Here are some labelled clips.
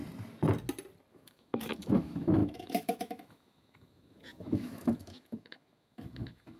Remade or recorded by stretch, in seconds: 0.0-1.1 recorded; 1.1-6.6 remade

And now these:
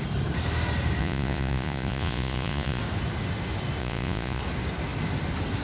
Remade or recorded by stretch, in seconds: 0.0-1.0 recorded; 1.0-2.8 remade; 2.8-3.8 recorded; 3.8-4.4 remade; 4.4-5.6 recorded

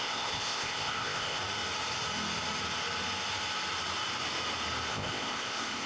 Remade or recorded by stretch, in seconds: 0.0-1.4 remade; 1.4-4.9 recorded; 4.9-5.9 remade

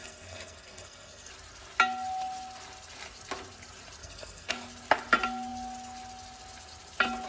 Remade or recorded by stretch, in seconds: 0.0-1.3 remade; 1.3-4.0 recorded; 4.0-4.5 remade; 4.5-7.3 recorded

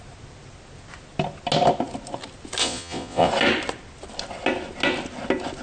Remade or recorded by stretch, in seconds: 0.0-2.6 recorded; 2.6-3.3 remade; 3.3-5.6 recorded

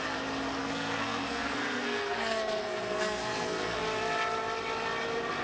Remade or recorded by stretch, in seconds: 0.0-0.6 recorded; 0.6-3.8 remade; 3.8-5.4 recorded

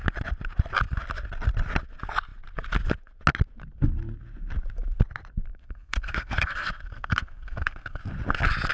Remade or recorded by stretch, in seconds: 0.0-5.5 recorded; 5.5-8.0 remade; 8.0-8.7 recorded

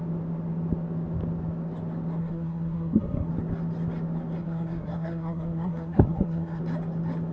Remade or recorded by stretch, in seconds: 0.0-2.2 recorded; 2.2-3.3 remade; 3.3-4.4 recorded; 4.4-6.6 remade; 6.6-7.3 recorded